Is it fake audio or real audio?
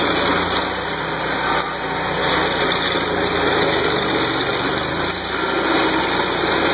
real